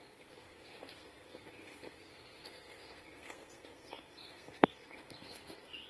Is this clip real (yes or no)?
no